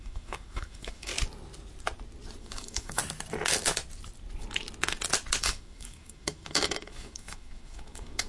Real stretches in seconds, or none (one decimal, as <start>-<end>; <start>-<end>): 1.1-2.4; 3.0-5.4